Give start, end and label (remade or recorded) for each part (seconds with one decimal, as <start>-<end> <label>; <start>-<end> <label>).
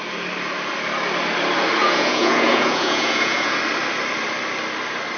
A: 0.0-1.8 recorded; 1.8-3.6 remade; 3.6-5.2 recorded